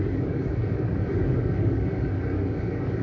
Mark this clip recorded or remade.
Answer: remade